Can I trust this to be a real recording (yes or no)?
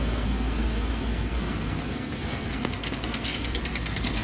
no